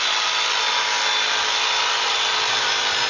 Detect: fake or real real